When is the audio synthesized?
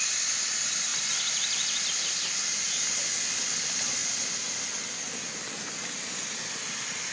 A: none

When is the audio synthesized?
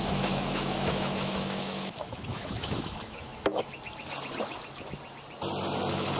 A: 0.0-3.6 (autoencoder, DAC-VAE)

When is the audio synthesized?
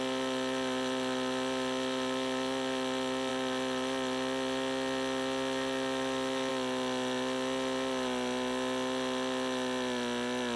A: none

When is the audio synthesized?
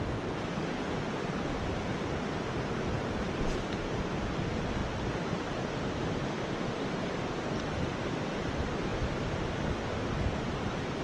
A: none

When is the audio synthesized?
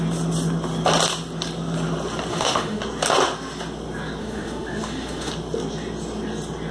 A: 2.3-2.8 (autoencoder, DAC-VAE); 4.2-5.3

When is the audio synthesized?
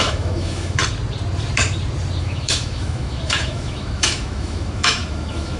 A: 0.0-0.8 (autoencoder, DAC-VAE); 2.2-5.6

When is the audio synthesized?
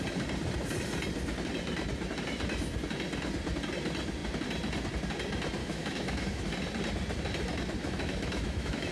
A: 5.6-6.4 (autoencoder, DAC-VAE); 7.8-8.9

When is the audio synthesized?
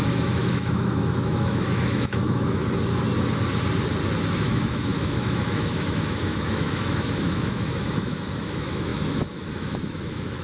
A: 0.0-2.6 (autoencoder, DAC-VAE); 4.4-10.4